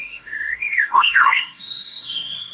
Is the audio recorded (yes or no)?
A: no